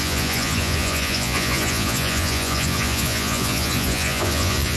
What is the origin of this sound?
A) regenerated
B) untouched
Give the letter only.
A